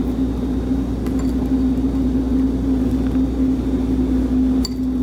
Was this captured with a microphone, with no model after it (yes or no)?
yes